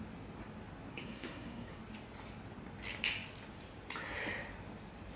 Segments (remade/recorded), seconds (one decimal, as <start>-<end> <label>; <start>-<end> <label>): 0.0-0.9 recorded; 0.9-1.8 remade; 1.8-5.2 recorded